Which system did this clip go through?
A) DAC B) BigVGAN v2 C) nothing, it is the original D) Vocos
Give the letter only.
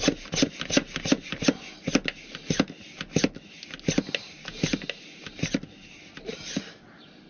C